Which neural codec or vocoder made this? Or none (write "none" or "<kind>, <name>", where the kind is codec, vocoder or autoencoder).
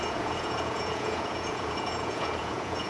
vocoder, Vocos